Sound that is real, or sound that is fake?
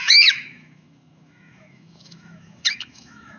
fake